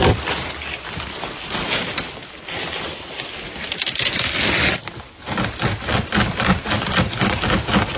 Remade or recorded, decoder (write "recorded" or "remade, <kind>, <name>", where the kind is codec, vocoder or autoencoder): recorded